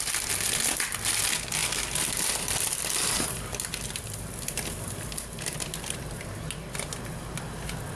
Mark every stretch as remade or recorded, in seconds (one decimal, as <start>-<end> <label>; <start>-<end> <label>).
0.0-1.6 recorded; 1.6-6.4 remade; 6.4-8.0 recorded